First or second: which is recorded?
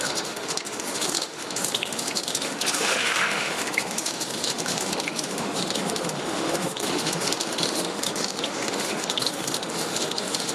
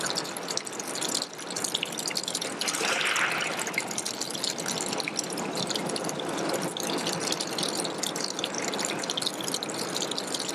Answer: second